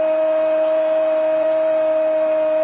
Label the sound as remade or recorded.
recorded